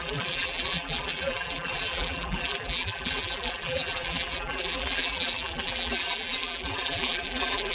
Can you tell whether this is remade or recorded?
remade